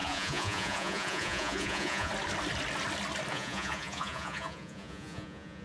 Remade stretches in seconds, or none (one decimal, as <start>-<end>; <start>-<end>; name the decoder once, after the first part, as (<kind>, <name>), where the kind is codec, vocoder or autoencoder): 0.0-2.1 (vocoder, Vocos); 3.3-5.6